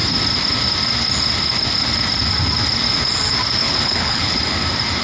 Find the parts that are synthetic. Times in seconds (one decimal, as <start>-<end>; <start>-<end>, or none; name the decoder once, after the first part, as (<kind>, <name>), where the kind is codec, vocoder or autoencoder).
3.6-4.4 (codec, HILCodec)